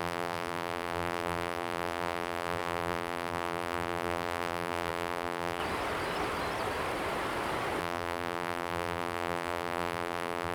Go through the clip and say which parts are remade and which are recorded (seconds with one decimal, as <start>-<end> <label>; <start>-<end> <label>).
0.0-5.6 remade; 5.6-7.8 recorded; 7.8-10.5 remade